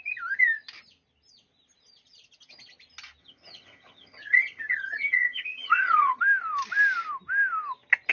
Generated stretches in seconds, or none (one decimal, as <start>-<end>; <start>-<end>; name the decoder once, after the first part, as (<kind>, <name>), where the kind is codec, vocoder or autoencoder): 3.2-6.2 (vocoder, HiFi-GAN)